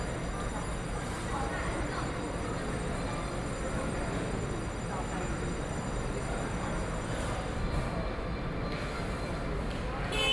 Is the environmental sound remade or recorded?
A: recorded